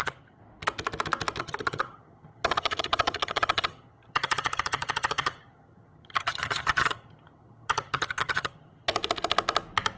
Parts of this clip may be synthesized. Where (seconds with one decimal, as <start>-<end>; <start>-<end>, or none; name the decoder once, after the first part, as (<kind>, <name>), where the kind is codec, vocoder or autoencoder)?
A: 0.0-0.4 (vocoder, HiFi-GAN); 1.4-8.9